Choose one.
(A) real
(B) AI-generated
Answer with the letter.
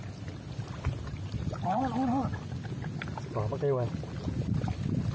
A